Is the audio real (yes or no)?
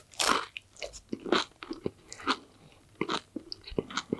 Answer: yes